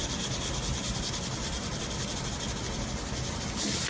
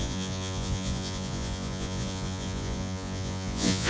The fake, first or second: second